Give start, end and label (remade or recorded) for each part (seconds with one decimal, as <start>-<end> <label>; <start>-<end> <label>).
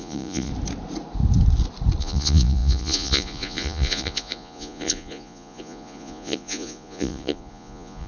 0.0-0.5 remade; 0.5-2.0 recorded; 2.0-8.1 remade